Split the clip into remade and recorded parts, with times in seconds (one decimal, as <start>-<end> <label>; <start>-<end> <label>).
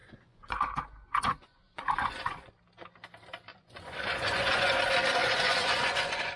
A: 0.0-2.5 remade; 2.5-3.5 recorded; 3.5-4.8 remade; 4.8-5.2 recorded; 5.2-6.4 remade